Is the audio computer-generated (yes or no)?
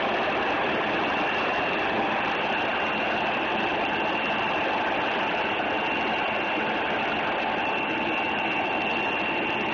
no